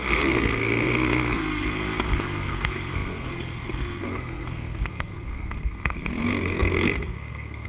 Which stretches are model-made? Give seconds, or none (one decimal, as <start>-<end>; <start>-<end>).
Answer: 0.0-7.7